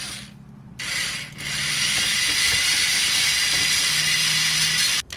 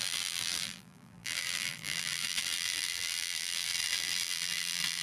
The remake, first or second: second